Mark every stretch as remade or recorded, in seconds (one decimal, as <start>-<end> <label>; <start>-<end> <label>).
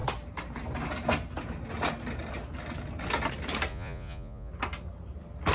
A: 0.0-3.7 recorded; 3.7-4.5 remade; 4.5-5.5 recorded